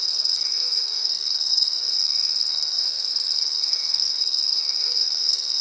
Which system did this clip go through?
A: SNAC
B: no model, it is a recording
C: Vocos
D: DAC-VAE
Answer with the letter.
A